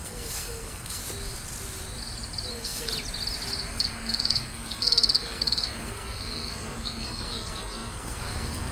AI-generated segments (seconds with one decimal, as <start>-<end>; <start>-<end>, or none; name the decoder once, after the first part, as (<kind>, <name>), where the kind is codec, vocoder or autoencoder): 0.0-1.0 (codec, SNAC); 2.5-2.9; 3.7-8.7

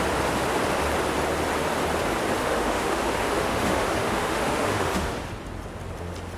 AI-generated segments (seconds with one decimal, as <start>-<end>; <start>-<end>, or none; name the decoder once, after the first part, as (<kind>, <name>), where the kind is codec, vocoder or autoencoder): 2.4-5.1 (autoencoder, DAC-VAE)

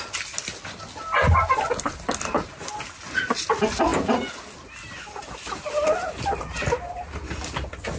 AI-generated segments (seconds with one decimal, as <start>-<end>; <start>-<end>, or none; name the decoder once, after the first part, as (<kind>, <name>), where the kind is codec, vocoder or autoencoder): none

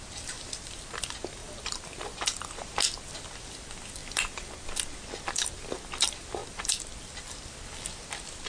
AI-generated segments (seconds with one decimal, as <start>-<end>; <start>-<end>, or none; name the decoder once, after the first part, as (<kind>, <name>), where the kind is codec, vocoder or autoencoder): 4.0-4.8 (vocoder, BigVGAN v2)

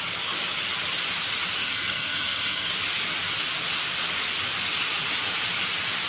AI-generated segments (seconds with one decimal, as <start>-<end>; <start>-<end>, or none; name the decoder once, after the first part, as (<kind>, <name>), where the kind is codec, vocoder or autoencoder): 1.6-2.7 (codec, SNAC)